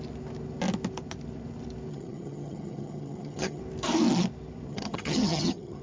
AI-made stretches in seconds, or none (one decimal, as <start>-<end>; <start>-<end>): 1.9-3.6; 4.7-5.8